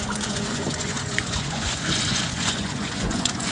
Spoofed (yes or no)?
yes